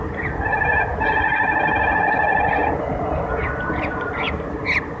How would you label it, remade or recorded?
recorded